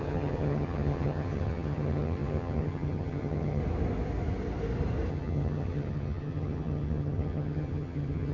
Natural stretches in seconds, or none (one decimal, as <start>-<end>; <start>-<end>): 3.6-5.1

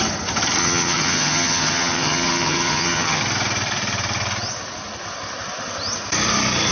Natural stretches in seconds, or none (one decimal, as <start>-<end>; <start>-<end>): 0.0-0.6; 3.2-6.7

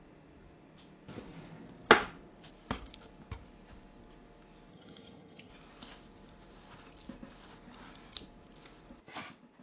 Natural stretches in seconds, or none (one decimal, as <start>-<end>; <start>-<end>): 0.0-4.7; 5.5-9.6

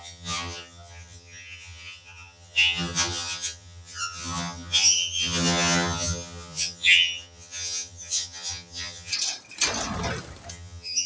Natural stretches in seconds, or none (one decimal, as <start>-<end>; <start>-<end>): 9.1-10.5

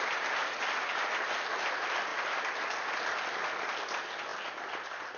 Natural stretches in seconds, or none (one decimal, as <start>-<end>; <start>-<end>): 0.0-5.2

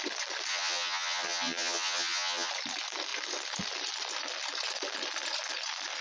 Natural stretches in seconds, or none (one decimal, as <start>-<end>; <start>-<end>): 0.0-0.5; 2.5-6.0